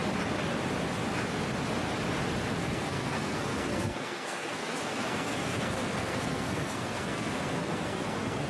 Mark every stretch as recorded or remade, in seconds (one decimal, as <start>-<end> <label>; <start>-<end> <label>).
0.0-2.6 recorded; 2.6-8.5 remade